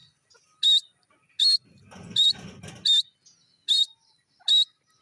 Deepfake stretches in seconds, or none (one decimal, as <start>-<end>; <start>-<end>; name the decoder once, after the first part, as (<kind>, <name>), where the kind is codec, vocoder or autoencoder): none

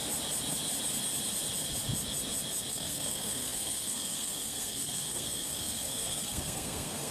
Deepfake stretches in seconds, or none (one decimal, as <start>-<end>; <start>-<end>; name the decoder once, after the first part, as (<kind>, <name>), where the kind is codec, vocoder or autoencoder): 2.7-7.1 (codec, SNAC)